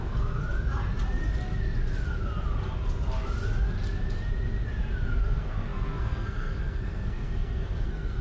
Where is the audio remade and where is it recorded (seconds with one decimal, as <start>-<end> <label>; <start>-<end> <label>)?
0.0-0.4 remade; 0.4-5.2 recorded; 5.2-8.2 remade